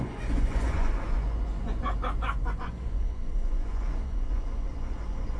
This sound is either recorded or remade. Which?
remade